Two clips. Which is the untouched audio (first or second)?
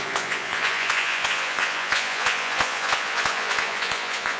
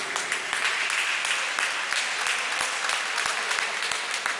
second